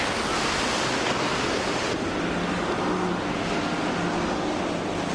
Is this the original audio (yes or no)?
yes